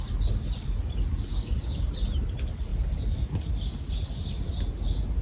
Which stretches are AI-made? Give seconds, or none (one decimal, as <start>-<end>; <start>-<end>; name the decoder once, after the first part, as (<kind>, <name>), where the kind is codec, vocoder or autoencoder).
1.3-1.9 (codec, DAC)